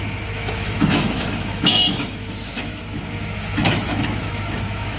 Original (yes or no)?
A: no